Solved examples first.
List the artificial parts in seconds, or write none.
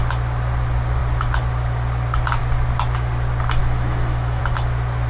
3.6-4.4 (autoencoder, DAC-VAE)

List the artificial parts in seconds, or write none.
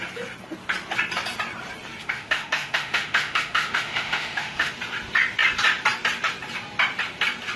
2.0-4.7 (autoencoder, DAC-VAE)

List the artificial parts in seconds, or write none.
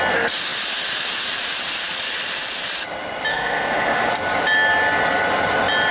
3.3-4.1 (autoencoder, DAC-VAE)